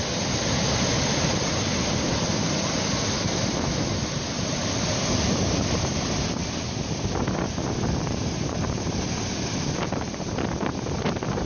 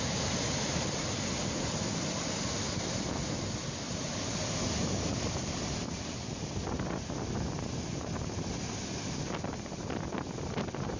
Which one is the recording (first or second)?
second